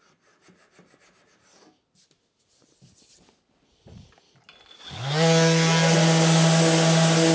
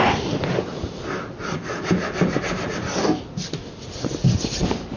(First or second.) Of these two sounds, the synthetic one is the second